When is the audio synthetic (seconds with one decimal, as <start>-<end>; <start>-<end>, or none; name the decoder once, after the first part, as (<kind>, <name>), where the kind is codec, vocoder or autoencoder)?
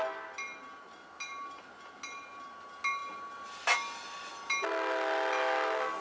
none